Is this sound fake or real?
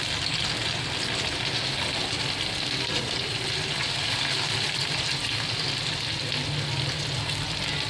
real